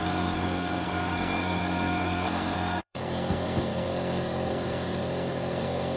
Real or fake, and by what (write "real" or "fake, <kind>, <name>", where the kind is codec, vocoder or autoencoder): fake, codec, SNAC